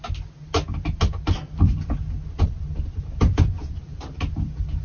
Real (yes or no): yes